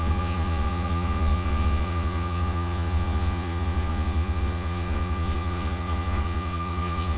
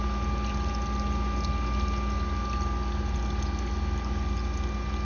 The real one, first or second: second